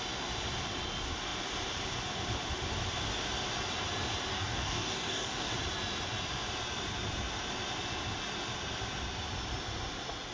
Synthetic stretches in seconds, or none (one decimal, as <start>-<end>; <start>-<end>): 4.3-5.5